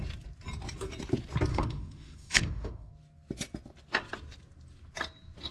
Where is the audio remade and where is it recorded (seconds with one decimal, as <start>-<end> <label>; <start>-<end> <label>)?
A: 0.0-1.5 recorded; 1.5-2.9 remade; 2.9-5.5 recorded